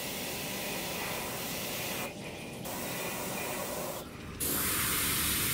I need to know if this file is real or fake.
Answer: real